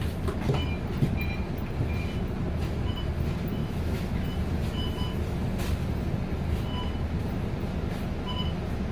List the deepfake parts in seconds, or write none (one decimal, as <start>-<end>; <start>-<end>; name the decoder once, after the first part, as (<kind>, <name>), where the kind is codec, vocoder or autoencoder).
3.6-4.2 (autoencoder, DAC-VAE)